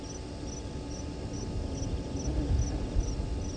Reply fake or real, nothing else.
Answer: real